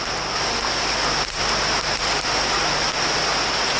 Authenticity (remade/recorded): recorded